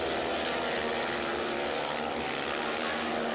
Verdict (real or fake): real